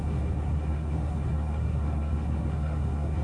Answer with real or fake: fake